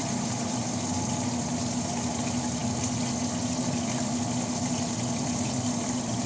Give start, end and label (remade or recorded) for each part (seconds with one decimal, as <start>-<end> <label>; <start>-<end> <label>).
0.0-2.6 remade; 2.6-4.9 recorded; 4.9-6.3 remade